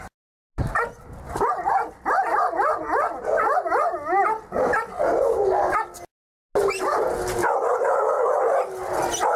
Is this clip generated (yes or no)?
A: no